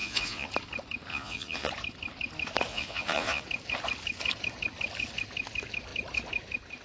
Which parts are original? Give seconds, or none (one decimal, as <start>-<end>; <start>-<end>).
0.5-1.1; 1.7-2.7; 3.4-6.8